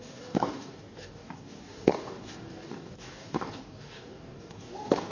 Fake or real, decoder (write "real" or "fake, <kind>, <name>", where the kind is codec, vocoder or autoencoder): fake, codec, DAC